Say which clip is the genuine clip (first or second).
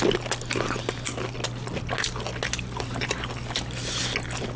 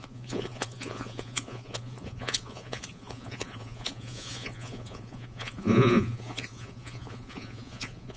first